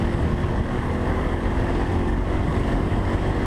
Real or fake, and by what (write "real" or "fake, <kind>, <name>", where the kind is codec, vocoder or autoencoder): fake, codec, DAC